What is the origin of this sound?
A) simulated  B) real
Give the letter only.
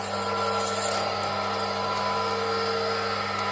B